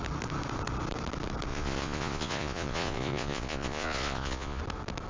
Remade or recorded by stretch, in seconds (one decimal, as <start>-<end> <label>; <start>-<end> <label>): 0.0-1.5 recorded; 1.5-4.6 remade; 4.6-5.1 recorded